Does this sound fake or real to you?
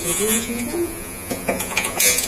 fake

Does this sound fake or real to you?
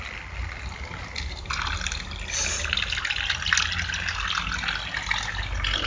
real